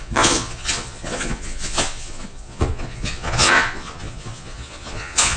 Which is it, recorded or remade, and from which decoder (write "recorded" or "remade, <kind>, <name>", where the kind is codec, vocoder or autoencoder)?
remade, vocoder, Vocos